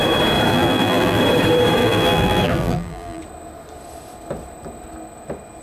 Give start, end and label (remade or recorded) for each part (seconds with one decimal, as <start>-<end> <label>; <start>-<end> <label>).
0.0-0.5 recorded; 0.5-1.2 remade; 1.2-1.8 recorded; 1.8-3.2 remade; 3.2-5.6 recorded